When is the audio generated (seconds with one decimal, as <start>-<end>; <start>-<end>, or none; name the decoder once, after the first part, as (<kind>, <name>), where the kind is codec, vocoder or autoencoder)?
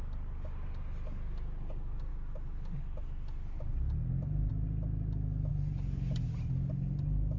5.5-6.5 (vocoder, BigVGAN v2)